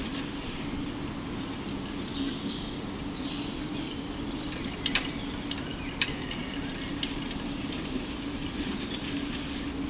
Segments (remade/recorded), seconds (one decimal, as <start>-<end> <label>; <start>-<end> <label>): 0.0-9.9 recorded